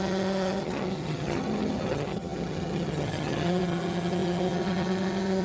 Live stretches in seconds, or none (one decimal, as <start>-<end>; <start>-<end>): none